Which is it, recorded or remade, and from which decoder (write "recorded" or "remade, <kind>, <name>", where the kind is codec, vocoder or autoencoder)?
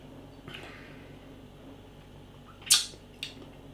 recorded